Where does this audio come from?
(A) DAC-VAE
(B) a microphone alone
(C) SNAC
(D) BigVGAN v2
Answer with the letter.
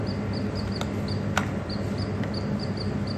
B